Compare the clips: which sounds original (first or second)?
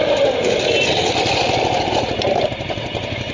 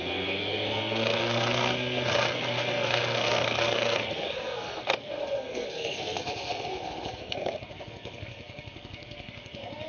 first